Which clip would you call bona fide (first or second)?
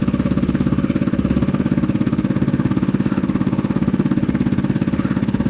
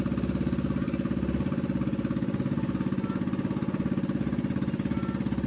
second